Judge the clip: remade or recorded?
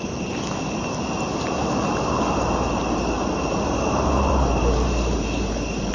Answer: remade